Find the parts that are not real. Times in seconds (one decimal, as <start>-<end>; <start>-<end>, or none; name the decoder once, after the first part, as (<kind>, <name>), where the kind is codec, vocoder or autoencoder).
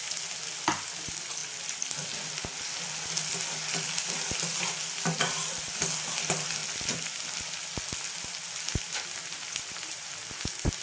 none